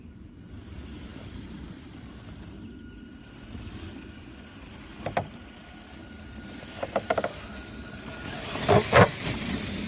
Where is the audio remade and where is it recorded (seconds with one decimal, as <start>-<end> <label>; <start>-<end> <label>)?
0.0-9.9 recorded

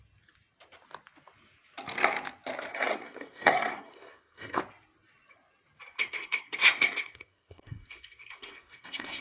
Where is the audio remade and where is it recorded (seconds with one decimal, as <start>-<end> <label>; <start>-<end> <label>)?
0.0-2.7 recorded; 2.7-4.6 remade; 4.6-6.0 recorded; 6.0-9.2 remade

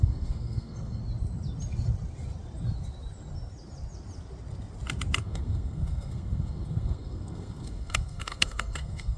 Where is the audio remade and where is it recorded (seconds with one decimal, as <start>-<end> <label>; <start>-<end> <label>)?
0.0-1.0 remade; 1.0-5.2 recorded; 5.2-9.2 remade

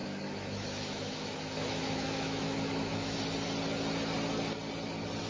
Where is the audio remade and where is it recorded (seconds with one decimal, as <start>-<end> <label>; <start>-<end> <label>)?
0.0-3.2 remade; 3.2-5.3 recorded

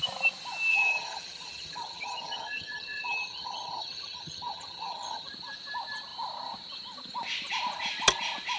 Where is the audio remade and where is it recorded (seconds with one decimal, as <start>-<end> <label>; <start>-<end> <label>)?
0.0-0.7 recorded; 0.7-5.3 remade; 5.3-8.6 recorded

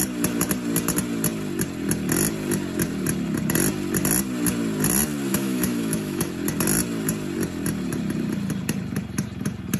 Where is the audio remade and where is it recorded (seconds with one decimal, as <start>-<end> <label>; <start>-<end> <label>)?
0.0-5.3 recorded; 5.3-6.3 remade; 6.3-9.8 recorded

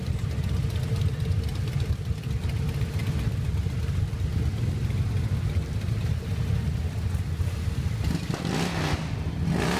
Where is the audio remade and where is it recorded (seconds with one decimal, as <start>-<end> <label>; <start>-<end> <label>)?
0.0-9.8 recorded